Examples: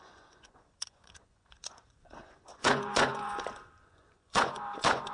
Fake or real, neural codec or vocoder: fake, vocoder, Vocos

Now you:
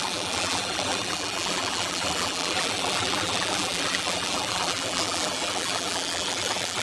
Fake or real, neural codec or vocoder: fake, vocoder, BigVGAN v2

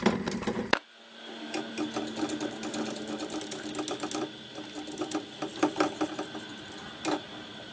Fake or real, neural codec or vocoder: real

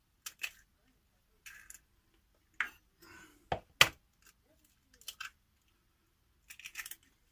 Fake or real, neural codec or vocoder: real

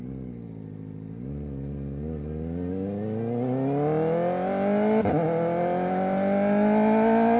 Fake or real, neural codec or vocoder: real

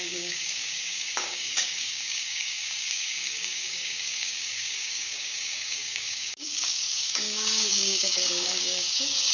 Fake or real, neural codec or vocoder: fake, codec, DAC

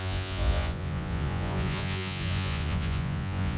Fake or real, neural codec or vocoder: fake, vocoder, Vocos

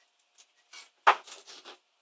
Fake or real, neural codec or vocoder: real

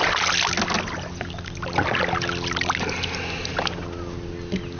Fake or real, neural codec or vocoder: real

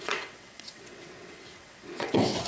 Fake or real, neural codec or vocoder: fake, vocoder, WaveNeXt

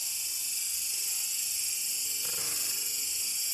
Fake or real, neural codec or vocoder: real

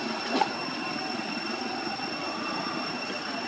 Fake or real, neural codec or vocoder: real